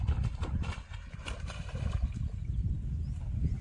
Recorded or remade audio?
recorded